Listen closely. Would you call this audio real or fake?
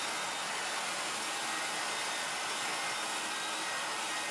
real